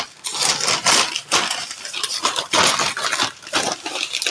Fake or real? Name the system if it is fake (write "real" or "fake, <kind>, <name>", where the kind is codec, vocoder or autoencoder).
real